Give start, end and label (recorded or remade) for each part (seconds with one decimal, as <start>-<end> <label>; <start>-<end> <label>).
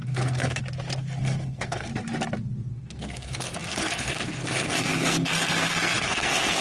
0.0-0.6 remade; 0.6-1.2 recorded; 1.2-1.9 remade; 1.9-2.7 recorded; 2.7-6.6 remade